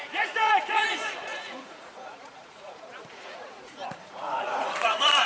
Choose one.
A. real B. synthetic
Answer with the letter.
B